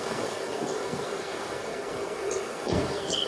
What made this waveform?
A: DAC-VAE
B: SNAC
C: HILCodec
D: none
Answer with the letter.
B